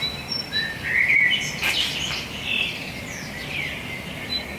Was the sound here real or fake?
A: real